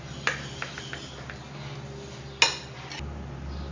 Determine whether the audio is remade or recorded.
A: recorded